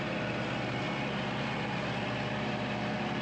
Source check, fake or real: real